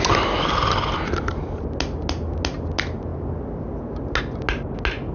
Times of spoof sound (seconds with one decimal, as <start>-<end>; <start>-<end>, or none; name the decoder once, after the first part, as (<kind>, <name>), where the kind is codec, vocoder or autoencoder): none